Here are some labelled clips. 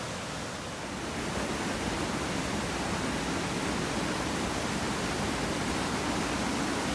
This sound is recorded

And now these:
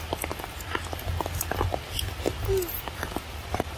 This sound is recorded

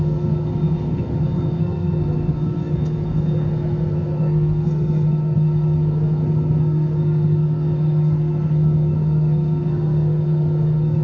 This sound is remade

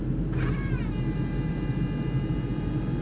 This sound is recorded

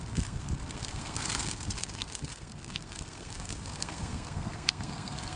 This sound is remade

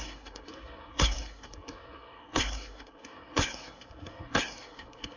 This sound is remade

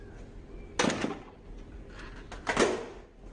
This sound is recorded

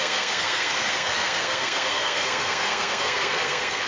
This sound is remade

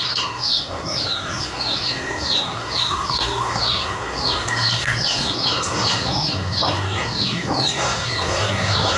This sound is remade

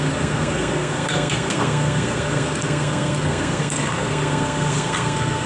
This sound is remade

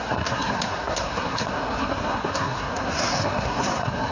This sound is remade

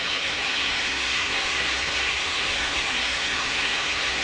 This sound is remade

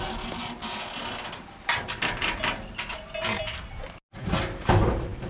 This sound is recorded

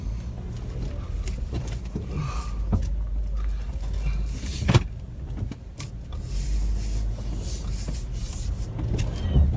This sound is recorded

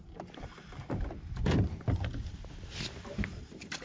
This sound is recorded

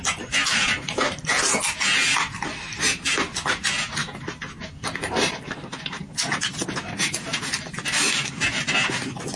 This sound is recorded